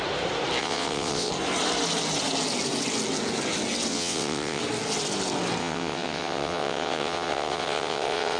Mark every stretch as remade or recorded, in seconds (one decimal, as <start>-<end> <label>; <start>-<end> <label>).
0.0-0.6 recorded; 0.6-1.3 remade; 1.3-3.9 recorded; 3.9-4.6 remade; 4.6-5.6 recorded; 5.6-8.4 remade